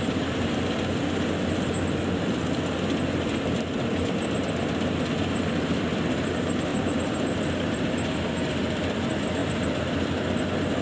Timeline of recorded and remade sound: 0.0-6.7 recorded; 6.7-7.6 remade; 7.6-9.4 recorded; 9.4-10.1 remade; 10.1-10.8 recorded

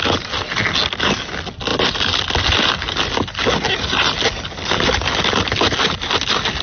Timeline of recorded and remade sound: 0.0-6.6 recorded

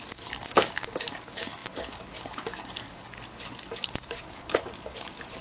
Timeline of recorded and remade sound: 0.0-5.4 remade

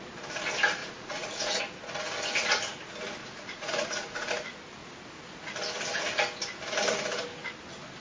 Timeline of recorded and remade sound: 0.0-0.8 recorded; 0.8-1.6 remade; 1.6-3.2 recorded; 3.2-4.3 remade; 4.3-8.0 recorded

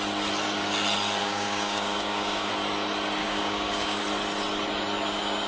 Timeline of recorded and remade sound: 0.0-1.2 recorded; 1.2-2.5 remade; 2.5-3.2 recorded; 3.2-4.0 remade; 4.0-5.5 recorded

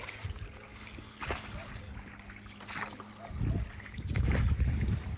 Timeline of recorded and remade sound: 0.0-0.7 remade; 0.7-3.8 recorded; 3.8-5.2 remade

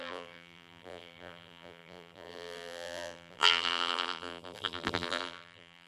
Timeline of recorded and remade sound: 0.0-5.9 remade

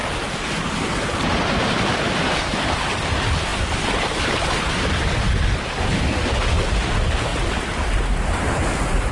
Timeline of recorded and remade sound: 0.0-9.1 recorded